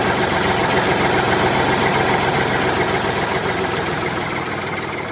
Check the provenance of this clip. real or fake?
fake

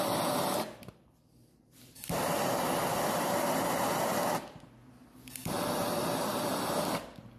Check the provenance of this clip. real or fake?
fake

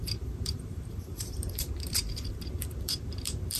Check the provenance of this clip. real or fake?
fake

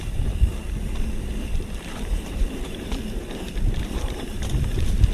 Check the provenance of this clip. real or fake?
fake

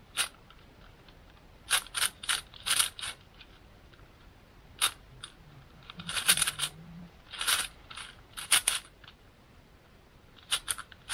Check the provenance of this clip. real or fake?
fake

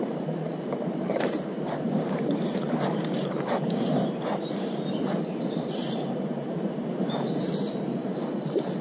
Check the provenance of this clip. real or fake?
fake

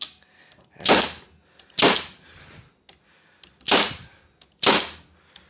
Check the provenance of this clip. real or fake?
real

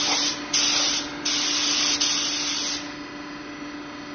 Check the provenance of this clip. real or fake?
real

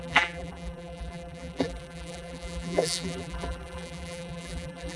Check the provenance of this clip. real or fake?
fake